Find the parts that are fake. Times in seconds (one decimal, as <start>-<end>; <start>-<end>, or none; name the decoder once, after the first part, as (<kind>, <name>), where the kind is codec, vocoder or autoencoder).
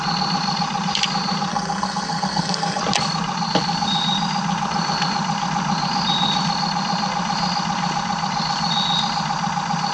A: 1.5-2.8 (codec, SNAC)